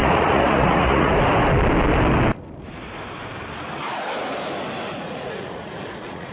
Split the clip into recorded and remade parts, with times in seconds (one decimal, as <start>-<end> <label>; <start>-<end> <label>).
0.0-1.1 remade; 1.1-4.9 recorded; 4.9-6.3 remade